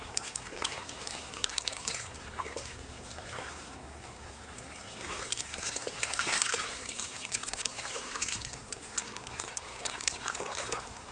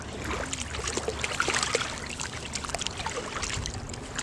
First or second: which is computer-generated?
first